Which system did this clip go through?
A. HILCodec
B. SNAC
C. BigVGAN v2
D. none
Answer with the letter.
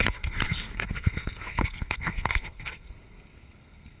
B